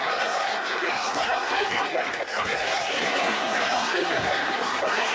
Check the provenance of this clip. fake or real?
fake